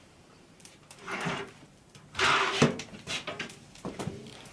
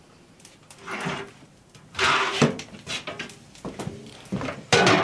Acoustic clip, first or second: second